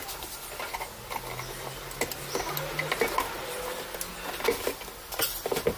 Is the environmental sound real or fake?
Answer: real